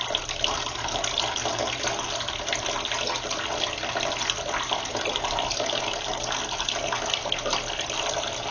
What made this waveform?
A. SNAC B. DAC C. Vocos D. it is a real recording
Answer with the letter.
D